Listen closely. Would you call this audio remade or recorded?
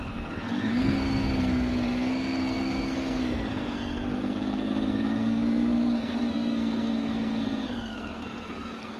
remade